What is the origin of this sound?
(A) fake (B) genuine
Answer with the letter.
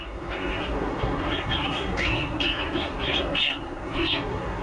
A